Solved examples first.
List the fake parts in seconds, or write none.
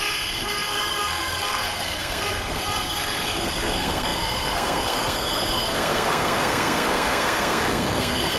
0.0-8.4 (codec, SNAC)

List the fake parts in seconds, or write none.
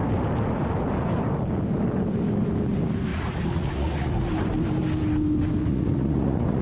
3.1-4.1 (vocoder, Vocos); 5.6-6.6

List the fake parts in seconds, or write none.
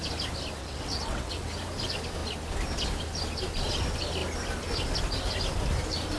0.6-1.5 (vocoder, WaveNeXt)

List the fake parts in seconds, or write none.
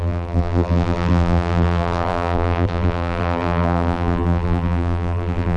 0.0-5.6 (vocoder, BigVGAN v2)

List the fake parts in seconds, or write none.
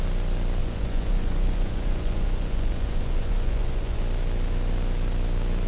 0.6-4.0 (vocoder, Vocos)